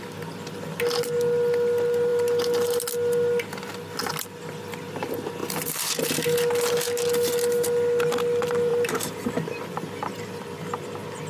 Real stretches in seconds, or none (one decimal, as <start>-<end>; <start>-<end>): 0.0-8.7; 10.6-11.3